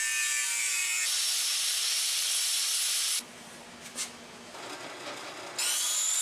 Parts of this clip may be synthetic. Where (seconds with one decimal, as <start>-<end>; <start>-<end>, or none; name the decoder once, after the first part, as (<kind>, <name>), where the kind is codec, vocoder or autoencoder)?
3.9-4.6 (autoencoder, DAC-VAE)